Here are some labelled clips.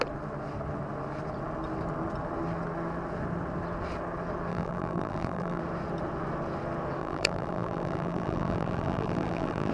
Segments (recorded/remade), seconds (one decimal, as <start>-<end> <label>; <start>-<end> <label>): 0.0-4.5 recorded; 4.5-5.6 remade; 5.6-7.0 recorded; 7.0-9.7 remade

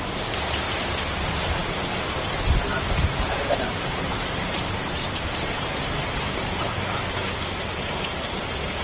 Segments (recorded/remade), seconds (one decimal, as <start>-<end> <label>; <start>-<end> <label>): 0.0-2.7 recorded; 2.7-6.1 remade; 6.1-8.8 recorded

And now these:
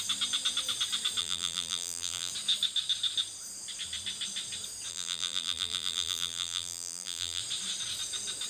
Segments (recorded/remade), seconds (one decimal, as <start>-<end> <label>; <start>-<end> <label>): 0.0-1.2 recorded; 1.2-2.3 remade; 2.3-4.9 recorded; 4.9-7.4 remade; 7.4-8.5 recorded